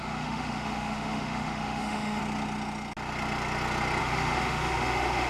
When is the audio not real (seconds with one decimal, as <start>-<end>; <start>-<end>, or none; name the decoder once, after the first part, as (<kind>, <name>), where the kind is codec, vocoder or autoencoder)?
0.0-2.2 (autoencoder, DAC-VAE); 4.0-5.3